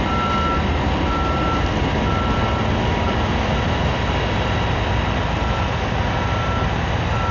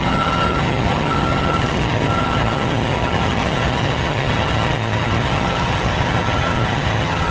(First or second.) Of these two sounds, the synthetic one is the second